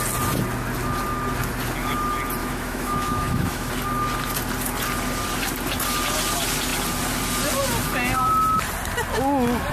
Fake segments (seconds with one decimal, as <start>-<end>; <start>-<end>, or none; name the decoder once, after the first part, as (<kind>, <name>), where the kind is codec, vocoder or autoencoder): 2.4-3.7 (autoencoder, DAC-VAE)